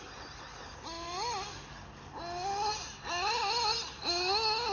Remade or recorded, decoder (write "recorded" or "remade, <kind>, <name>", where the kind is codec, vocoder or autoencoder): recorded